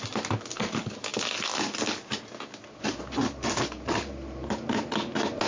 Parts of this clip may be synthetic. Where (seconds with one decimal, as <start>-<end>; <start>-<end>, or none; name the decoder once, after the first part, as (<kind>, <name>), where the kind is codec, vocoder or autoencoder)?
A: none